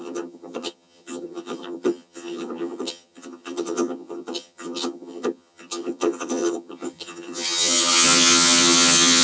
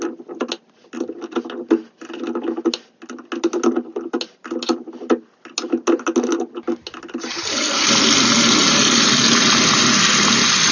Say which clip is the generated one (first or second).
first